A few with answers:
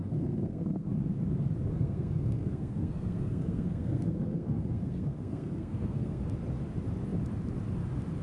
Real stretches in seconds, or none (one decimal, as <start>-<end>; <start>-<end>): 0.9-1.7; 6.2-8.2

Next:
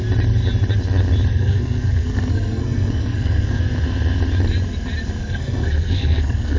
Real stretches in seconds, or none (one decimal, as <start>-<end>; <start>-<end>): 0.0-1.3; 3.6-5.2

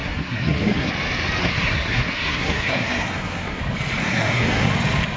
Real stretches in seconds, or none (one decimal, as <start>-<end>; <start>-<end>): 0.9-1.4; 3.6-4.0; 4.7-5.2

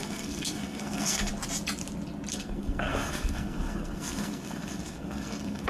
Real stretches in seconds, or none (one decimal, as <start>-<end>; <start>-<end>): 1.3-2.3

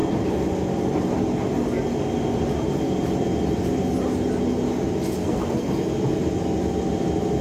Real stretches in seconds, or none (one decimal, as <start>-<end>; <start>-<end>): 0.0-5.2; 5.7-7.4

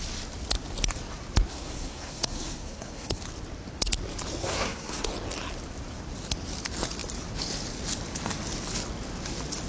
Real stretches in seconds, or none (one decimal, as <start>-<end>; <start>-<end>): 0.0-1.5; 3.2-4.4; 5.1-9.7